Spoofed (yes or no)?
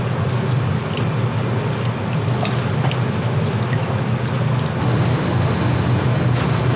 no